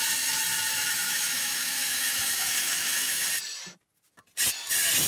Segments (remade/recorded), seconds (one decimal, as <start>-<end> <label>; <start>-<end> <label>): 0.0-0.7 recorded; 0.7-3.2 remade; 3.2-5.1 recorded